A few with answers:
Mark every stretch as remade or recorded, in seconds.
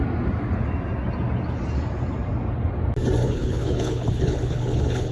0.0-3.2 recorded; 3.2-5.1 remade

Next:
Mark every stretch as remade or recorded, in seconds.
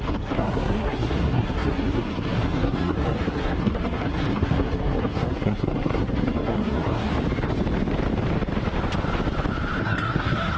0.0-7.1 remade; 7.1-9.8 recorded; 9.8-10.6 remade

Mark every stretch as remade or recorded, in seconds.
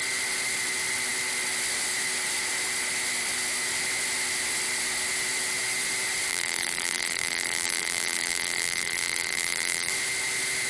0.0-6.3 recorded; 6.3-9.9 remade; 9.9-10.7 recorded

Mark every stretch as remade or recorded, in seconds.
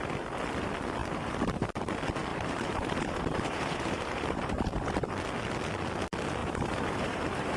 0.0-1.0 recorded; 1.0-1.9 remade; 1.9-2.3 recorded; 2.3-4.8 remade; 4.8-6.4 recorded; 6.4-7.6 remade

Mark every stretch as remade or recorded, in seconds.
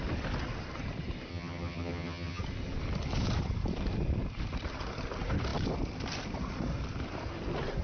0.0-1.3 recorded; 1.3-2.4 remade; 2.4-7.8 recorded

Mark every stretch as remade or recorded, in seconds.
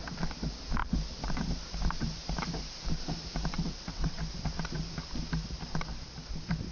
0.0-3.5 recorded; 3.5-4.2 remade; 4.2-6.7 recorded